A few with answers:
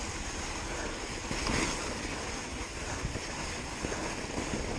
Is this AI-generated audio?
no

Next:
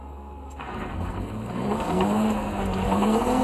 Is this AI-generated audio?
yes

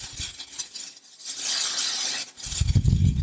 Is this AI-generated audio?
no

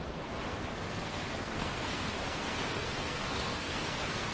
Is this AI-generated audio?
yes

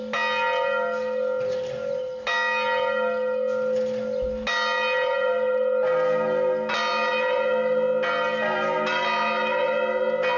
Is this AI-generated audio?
no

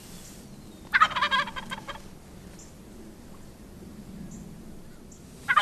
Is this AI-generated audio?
no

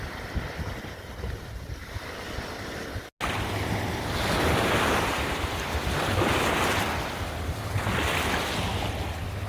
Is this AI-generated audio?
no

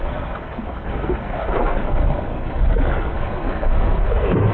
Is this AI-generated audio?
yes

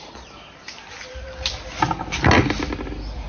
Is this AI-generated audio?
no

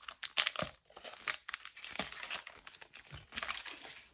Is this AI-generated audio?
no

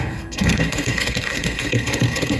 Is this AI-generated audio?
yes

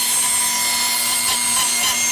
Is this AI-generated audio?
no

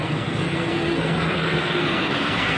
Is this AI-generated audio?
yes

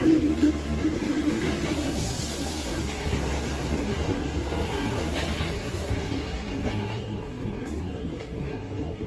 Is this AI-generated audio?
yes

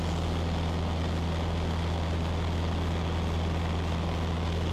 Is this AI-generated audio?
no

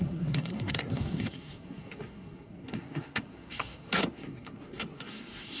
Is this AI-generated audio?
yes